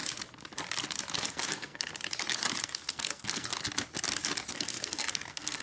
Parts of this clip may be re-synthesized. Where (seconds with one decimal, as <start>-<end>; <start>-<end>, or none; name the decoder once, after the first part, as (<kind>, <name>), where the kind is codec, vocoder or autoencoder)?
1.3-1.9 (codec, SNAC); 2.6-3.5; 4.5-5.6